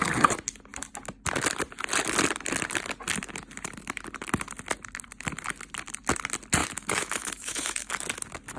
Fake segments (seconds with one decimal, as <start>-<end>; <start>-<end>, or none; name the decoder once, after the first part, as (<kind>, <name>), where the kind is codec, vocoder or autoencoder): 6.6-7.9 (autoencoder, DAC-VAE)